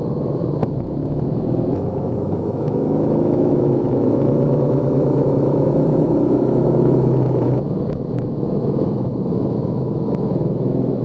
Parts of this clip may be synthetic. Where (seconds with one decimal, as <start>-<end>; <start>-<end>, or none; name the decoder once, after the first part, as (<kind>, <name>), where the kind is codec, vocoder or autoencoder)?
0.0-11.0 (autoencoder, DAC-VAE)

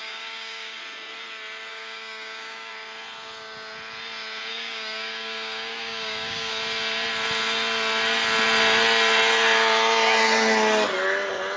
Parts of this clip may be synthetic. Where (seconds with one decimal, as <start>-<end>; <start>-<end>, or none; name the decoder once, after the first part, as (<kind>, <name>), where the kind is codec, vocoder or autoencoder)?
0.0-0.8 (codec, DAC); 1.7-2.7; 4.5-6.5

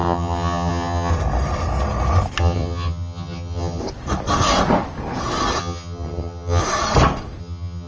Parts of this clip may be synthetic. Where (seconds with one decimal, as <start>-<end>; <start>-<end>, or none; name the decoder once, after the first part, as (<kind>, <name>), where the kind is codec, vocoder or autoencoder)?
0.0-1.1 (vocoder, HiFi-GAN); 2.4-3.8; 5.6-6.6; 7.4-7.9

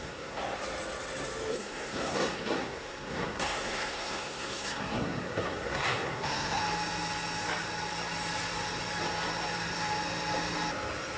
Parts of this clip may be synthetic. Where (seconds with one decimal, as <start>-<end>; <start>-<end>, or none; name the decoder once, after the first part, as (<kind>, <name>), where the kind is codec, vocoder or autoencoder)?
0.0-0.4 (codec, SNAC); 1.5-6.6